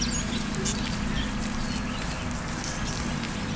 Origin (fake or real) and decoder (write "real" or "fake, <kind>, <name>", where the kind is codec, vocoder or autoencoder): real